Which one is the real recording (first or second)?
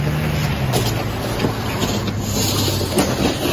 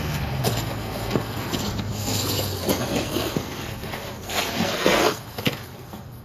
first